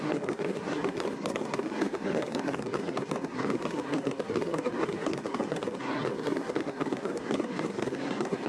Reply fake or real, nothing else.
fake